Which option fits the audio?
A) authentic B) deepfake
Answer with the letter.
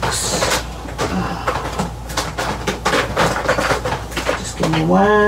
A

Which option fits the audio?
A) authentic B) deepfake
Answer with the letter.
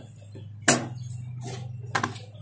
A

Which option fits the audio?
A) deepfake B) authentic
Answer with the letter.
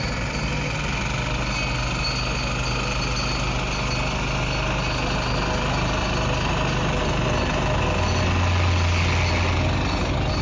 B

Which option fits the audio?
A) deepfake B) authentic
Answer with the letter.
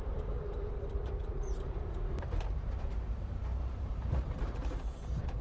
A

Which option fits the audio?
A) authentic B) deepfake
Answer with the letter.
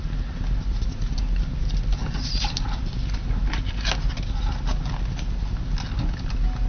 A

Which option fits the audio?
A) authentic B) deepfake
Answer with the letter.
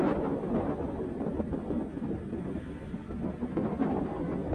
A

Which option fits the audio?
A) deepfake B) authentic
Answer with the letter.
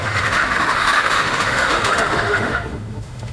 A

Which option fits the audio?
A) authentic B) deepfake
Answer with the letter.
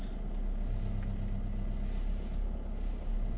A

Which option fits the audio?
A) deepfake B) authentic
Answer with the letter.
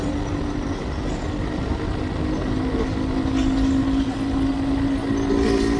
B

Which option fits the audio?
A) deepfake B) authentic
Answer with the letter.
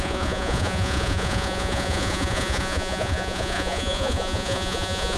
A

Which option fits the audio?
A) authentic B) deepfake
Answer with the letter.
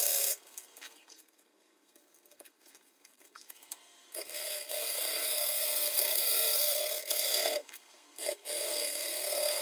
B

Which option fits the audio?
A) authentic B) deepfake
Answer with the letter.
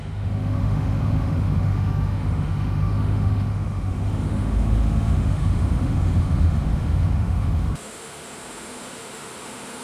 B